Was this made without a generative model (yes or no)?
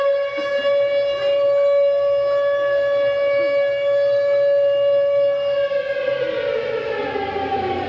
yes